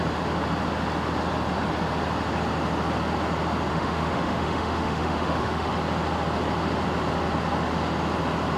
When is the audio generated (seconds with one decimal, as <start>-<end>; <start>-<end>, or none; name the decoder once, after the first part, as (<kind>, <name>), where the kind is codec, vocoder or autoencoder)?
3.7-5.7 (autoencoder, DAC-VAE)

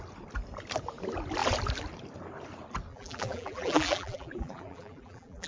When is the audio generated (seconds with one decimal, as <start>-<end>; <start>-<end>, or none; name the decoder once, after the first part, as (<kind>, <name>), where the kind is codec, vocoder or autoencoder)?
2.9-5.5 (vocoder, BigVGAN v2)

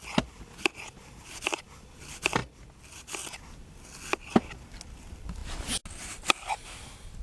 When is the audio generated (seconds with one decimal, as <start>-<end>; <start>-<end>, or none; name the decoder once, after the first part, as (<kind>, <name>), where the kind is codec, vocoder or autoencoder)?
none

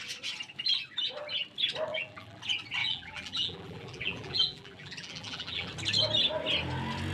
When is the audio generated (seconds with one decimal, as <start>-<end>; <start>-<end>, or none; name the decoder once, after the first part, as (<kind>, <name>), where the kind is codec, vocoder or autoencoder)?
1.9-2.4 (vocoder, BigVGAN v2); 2.8-5.7

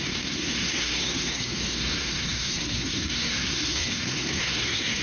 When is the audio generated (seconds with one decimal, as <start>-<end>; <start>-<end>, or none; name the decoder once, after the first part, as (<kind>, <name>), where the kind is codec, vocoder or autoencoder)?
0.0-5.0 (codec, SNAC)